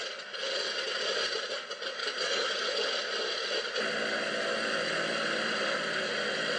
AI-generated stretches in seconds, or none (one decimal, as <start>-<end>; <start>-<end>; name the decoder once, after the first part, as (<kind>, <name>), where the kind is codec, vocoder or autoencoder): 2.0-2.5 (codec, DAC)

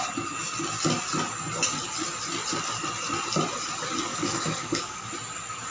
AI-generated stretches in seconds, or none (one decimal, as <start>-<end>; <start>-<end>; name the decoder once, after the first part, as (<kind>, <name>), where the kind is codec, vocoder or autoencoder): 4.1-5.1 (codec, DAC)

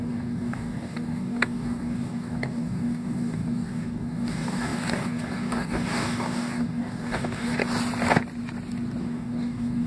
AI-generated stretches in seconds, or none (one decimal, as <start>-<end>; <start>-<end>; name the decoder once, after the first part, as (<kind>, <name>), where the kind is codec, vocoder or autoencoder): 0.0-7.6 (codec, DAC); 9.0-9.9

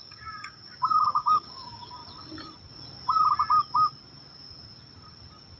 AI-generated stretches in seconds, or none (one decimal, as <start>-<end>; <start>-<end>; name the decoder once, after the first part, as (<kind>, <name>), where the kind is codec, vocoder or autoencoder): 0.0-2.0 (codec, DAC)

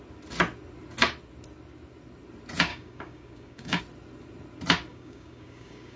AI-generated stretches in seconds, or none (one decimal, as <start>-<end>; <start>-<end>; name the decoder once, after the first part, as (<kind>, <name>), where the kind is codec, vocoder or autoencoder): 2.7-3.8 (codec, DAC); 4.9-6.0

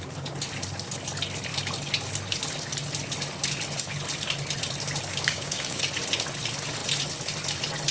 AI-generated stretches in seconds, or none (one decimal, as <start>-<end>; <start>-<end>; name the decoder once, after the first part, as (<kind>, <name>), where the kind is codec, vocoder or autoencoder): 5.1-5.8 (codec, DAC)